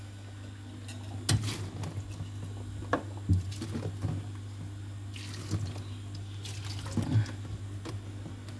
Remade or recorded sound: recorded